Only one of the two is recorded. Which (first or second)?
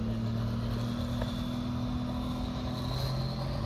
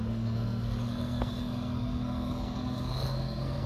first